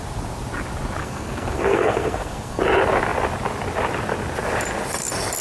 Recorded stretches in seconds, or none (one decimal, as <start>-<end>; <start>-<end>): 0.0-1.0; 2.6-5.4